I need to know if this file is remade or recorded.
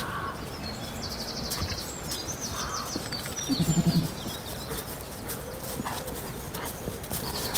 recorded